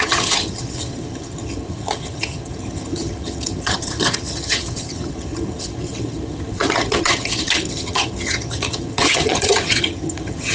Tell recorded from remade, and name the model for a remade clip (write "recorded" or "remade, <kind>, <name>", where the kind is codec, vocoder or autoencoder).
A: remade, vocoder, HiFi-GAN